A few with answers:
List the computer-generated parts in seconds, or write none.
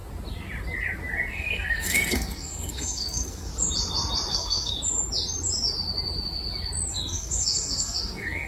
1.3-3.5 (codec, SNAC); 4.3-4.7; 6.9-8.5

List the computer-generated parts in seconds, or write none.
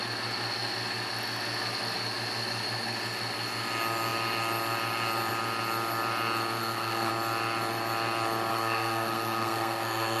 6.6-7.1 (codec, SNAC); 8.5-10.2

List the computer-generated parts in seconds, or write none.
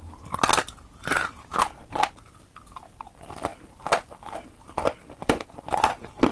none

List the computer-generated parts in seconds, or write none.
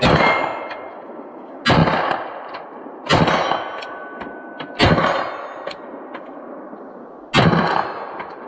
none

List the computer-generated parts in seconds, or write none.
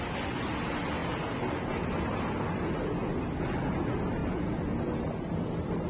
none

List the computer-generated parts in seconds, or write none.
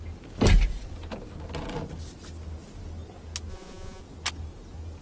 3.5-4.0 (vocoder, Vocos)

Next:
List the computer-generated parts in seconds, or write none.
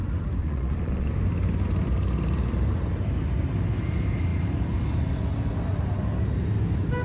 0.4-1.1 (vocoder, Vocos)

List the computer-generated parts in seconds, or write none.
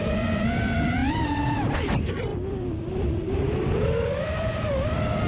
0.0-1.0 (vocoder, BigVGAN v2); 1.7-5.3